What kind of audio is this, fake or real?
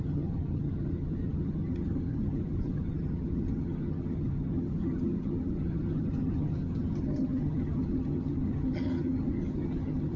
fake